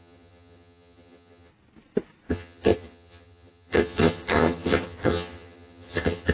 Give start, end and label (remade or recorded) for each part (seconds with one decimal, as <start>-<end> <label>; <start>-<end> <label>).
0.0-1.5 remade; 1.5-2.3 recorded; 2.3-6.3 remade